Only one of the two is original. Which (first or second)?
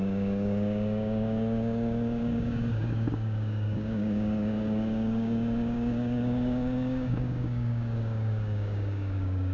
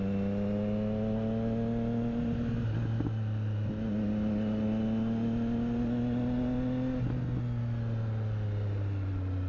second